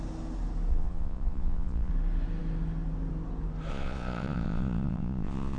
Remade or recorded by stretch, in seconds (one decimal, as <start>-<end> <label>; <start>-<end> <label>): 0.0-0.7 recorded; 0.7-1.9 remade; 1.9-3.7 recorded; 3.7-5.6 remade